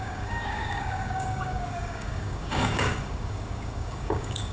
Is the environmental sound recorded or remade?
remade